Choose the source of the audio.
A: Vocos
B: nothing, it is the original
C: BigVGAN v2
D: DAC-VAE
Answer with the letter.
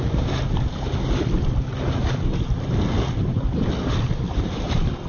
B